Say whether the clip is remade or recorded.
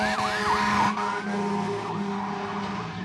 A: recorded